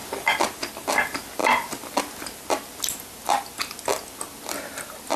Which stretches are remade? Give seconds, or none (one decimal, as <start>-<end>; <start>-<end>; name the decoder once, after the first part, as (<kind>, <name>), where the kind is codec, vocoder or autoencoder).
none